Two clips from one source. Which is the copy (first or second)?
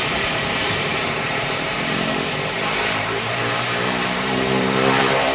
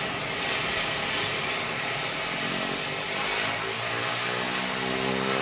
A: first